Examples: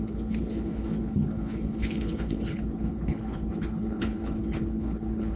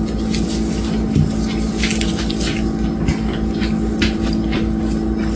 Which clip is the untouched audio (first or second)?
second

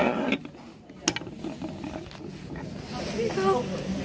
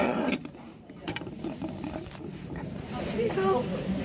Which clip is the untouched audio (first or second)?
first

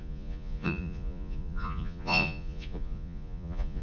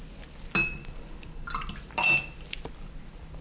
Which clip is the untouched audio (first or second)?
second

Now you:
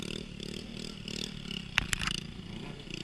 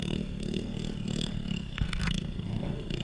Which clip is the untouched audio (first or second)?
first